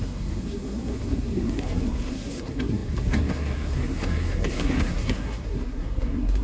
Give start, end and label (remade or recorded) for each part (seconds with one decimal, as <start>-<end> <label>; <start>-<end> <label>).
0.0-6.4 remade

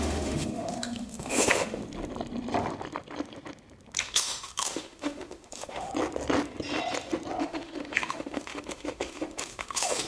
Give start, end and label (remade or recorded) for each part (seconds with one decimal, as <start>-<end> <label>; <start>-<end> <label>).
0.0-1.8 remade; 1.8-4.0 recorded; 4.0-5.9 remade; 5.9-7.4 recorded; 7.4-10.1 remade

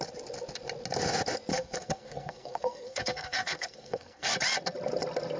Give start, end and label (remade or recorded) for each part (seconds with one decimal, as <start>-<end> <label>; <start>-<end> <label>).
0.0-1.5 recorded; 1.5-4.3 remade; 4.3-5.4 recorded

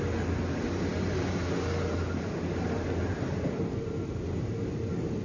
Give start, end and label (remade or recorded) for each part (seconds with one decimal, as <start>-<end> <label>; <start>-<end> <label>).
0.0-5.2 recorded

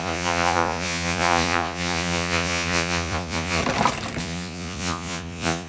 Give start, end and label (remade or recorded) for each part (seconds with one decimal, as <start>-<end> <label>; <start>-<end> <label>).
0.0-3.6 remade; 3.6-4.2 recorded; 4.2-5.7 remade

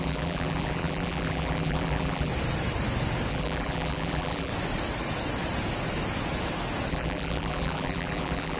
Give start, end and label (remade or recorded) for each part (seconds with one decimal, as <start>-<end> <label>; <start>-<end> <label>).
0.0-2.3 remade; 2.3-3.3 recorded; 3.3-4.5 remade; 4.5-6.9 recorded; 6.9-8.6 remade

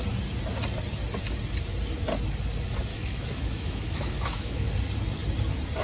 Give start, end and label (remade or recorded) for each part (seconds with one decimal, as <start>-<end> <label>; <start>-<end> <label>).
0.0-2.9 recorded; 2.9-4.7 remade; 4.7-5.8 recorded

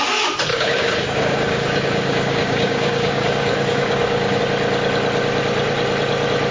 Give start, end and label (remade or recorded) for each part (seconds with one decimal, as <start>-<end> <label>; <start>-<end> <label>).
0.0-0.5 recorded; 0.5-4.4 remade; 4.4-6.5 recorded